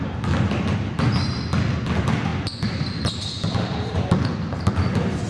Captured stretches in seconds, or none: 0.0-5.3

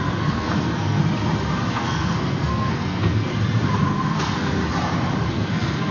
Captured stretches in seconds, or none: 1.0-1.7; 3.3-3.9; 4.6-5.3

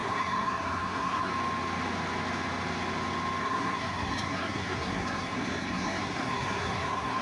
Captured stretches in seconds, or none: 1.3-3.4

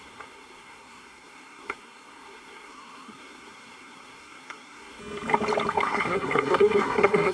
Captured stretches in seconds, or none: 5.0-5.7

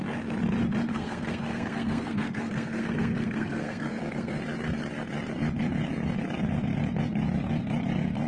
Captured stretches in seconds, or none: 0.0-0.9; 4.4-8.3

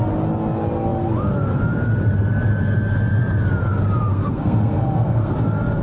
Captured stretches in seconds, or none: 0.0-4.1; 5.3-5.8

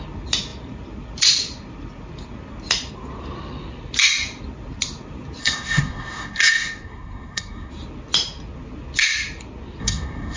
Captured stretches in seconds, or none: 0.0-5.4; 7.7-9.8